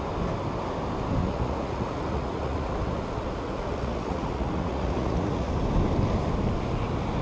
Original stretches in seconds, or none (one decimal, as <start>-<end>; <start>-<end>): 0.0-1.2; 5.5-7.2